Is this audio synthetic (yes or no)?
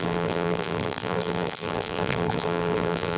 yes